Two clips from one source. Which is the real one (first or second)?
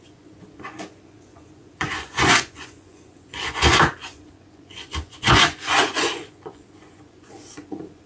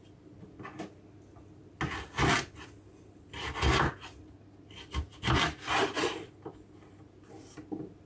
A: second